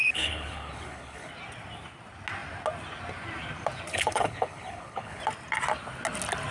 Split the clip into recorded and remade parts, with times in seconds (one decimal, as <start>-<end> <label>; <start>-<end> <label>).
0.0-1.3 remade; 1.3-3.9 recorded; 3.9-5.2 remade; 5.2-6.5 recorded

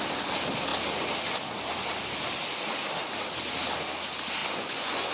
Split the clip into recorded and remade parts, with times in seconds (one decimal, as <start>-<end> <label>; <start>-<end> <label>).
0.0-4.4 recorded; 4.4-5.1 remade

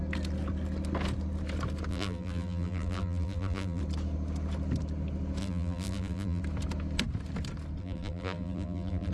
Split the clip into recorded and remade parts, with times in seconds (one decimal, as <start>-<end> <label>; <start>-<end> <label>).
0.0-1.9 recorded; 1.9-3.8 remade; 3.8-5.4 recorded; 5.4-6.4 remade; 6.4-7.8 recorded; 7.8-9.1 remade

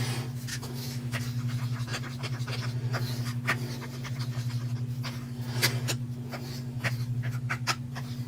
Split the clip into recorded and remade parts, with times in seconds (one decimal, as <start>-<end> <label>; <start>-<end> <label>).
0.0-0.5 recorded; 0.5-1.2 remade; 1.2-8.3 recorded

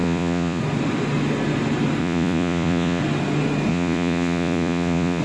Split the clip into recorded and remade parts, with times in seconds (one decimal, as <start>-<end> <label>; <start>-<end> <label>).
0.0-0.6 remade; 0.6-2.0 recorded; 2.0-3.0 remade; 3.0-3.7 recorded; 3.7-5.2 remade